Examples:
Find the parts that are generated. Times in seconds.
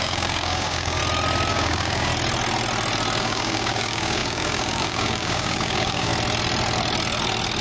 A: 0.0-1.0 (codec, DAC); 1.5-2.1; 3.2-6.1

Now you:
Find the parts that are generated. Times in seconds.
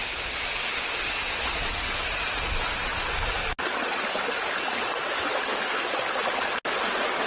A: none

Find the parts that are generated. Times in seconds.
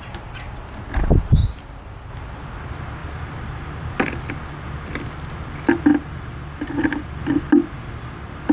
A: 1.4-2.1 (vocoder, BigVGAN v2); 3.0-4.3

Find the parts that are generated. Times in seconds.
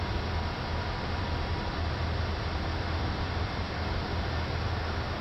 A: 0.7-3.8 (vocoder, BigVGAN v2)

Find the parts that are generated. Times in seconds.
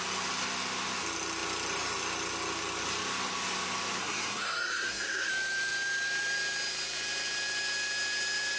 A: 4.0-5.3 (codec, SNAC)